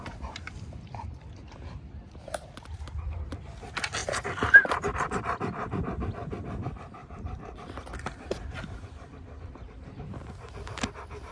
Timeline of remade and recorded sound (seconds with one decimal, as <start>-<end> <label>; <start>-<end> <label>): 0.0-4.0 recorded; 4.0-4.6 remade; 4.6-7.0 recorded; 7.0-9.5 remade; 9.5-11.3 recorded